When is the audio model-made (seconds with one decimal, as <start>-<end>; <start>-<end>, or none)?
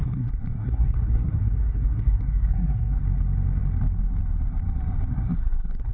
0.0-3.0; 5.1-5.9